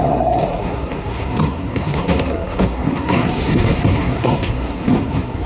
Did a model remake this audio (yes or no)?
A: yes